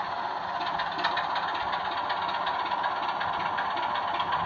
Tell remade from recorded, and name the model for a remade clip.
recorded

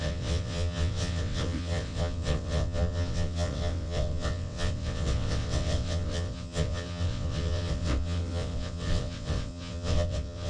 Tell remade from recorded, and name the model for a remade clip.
remade, vocoder, WaveNeXt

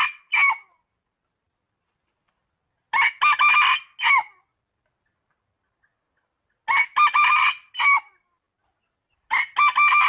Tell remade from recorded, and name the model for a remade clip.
recorded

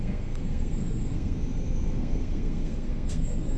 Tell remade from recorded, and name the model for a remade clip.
remade, codec, SNAC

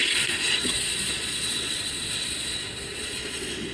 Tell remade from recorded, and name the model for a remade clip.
remade, vocoder, Vocos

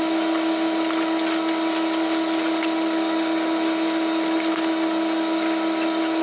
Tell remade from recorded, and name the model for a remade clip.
recorded